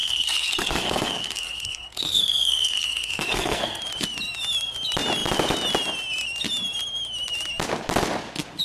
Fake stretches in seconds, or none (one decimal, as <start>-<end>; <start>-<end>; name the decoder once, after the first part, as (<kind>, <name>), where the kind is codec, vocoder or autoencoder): 0.0-3.8 (codec, SNAC)